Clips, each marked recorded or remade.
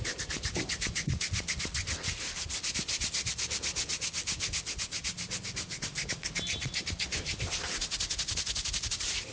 recorded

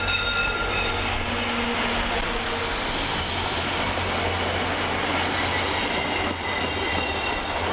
recorded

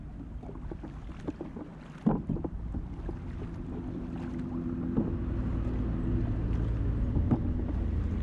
recorded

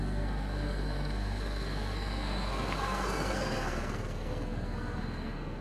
remade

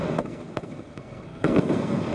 remade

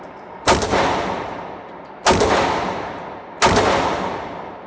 recorded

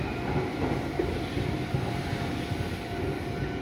recorded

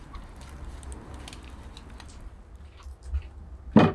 recorded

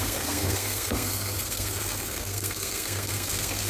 remade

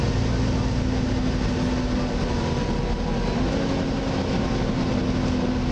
recorded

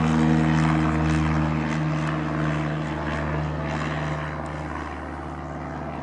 recorded